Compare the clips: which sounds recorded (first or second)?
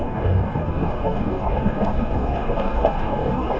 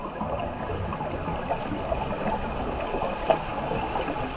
second